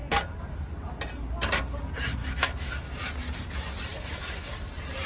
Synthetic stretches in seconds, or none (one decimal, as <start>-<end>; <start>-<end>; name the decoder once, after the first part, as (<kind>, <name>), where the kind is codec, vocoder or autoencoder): 2.2-2.9 (autoencoder, DAC-VAE); 3.9-4.5

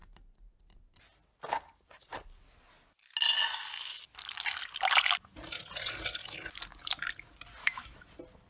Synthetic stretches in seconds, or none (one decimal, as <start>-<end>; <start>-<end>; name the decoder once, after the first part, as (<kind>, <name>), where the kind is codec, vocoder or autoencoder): 7.6-8.1 (autoencoder, DAC-VAE)

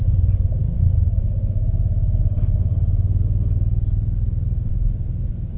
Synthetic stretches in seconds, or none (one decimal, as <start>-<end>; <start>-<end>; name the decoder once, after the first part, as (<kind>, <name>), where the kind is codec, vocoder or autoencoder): 0.6-3.2 (autoencoder, DAC-VAE)

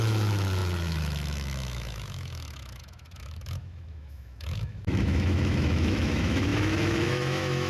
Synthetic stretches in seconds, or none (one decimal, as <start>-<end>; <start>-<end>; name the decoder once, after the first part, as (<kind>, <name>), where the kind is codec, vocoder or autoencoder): 0.0-7.7 (autoencoder, DAC-VAE)

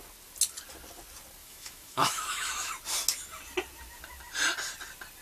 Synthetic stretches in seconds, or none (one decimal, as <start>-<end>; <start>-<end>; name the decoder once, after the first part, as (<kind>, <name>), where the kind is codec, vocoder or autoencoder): 1.4-2.7 (autoencoder, DAC-VAE)

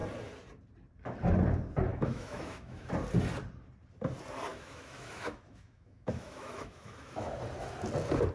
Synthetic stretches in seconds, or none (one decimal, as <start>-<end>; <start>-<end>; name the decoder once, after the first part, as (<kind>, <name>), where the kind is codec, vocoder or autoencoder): 1.9-2.9 (autoencoder, DAC-VAE); 4.5-7.4

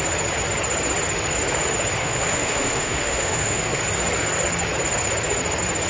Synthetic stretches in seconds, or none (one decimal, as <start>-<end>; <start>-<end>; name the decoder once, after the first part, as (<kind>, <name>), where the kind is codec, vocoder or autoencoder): 2.0-3.8 (autoencoder, DAC-VAE)